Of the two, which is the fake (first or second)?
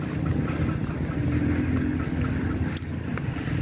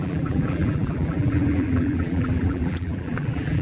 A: second